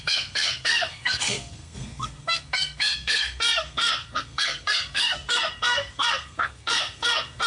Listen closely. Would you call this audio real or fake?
fake